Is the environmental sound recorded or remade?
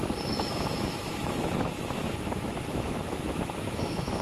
remade